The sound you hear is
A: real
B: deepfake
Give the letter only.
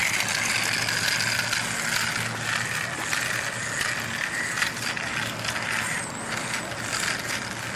A